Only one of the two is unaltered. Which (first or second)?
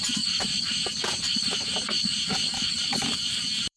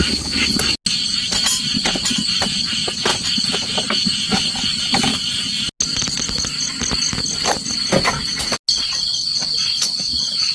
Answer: second